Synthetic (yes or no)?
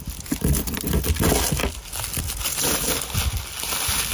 no